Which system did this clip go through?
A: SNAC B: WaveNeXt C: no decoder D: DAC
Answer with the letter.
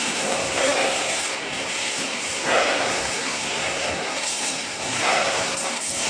A